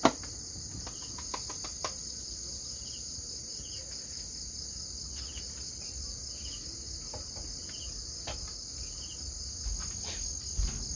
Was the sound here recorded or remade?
recorded